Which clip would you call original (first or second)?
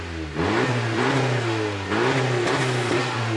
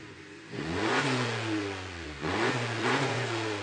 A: first